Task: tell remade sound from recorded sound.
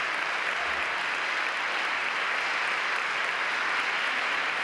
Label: recorded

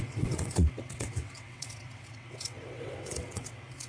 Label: remade